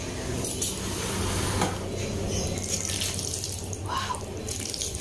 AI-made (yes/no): no